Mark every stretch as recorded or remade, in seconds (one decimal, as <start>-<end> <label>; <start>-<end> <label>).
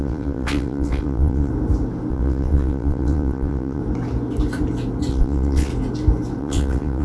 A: 0.0-1.5 remade; 1.5-2.1 recorded; 2.1-3.8 remade; 3.8-5.1 recorded; 5.1-5.7 remade; 5.7-6.4 recorded; 6.4-7.0 remade